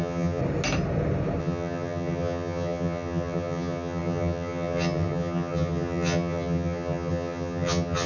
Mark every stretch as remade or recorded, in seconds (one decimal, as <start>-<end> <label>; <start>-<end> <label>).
0.0-0.4 remade; 0.4-1.4 recorded; 1.4-8.1 remade